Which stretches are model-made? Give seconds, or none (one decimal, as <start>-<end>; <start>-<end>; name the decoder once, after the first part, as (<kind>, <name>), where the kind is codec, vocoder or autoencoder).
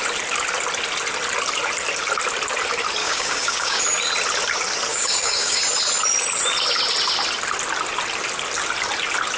3.0-3.8 (codec, DAC); 4.9-5.6